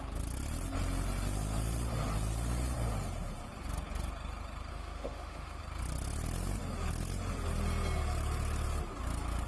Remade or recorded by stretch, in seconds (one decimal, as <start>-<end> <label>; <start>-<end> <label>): 0.0-4.7 recorded; 4.7-5.6 remade; 5.6-9.5 recorded